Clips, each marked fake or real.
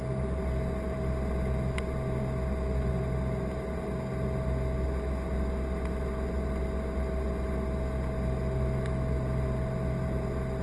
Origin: real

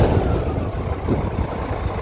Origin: real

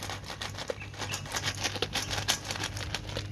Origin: real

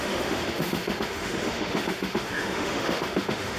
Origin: fake